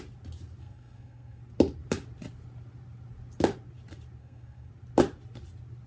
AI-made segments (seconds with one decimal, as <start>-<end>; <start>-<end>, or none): 0.6-1.4; 4.2-4.7